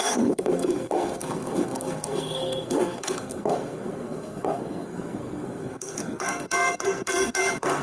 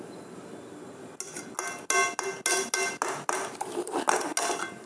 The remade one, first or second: first